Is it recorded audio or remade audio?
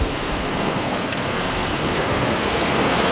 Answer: remade